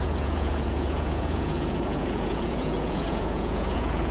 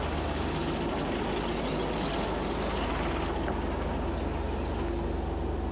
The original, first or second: second